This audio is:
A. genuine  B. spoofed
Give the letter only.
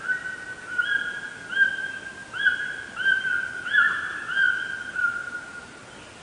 A